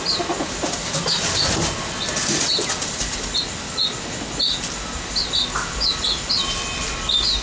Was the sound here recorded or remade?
recorded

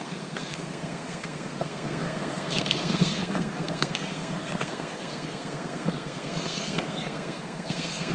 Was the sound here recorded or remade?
remade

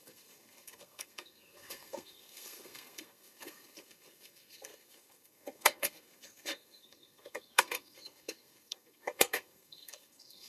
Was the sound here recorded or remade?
remade